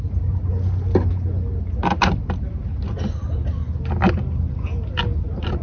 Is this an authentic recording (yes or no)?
yes